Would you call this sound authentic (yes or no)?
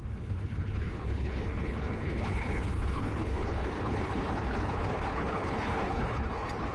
no